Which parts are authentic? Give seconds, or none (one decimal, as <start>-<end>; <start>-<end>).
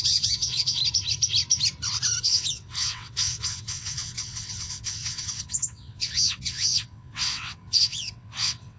0.8-2.2